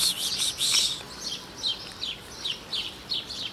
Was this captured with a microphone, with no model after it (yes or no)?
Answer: yes